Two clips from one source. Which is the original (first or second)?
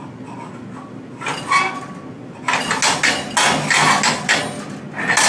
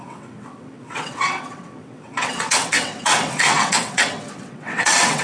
first